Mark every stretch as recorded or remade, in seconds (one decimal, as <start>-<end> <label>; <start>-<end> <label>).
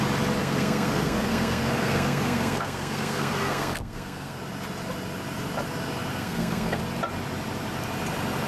0.0-0.4 recorded; 0.4-4.4 remade; 4.4-6.1 recorded; 6.1-6.8 remade; 6.8-8.5 recorded